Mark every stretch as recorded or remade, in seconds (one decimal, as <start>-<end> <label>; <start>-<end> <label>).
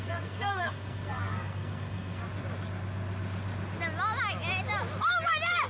0.0-2.2 remade; 2.2-5.7 recorded